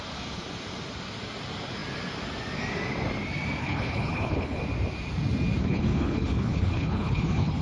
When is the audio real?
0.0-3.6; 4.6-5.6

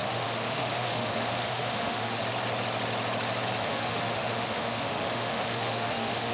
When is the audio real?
2.2-3.6

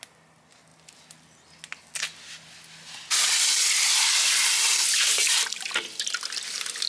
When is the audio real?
0.0-6.9